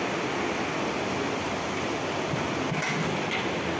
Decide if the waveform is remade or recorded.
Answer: recorded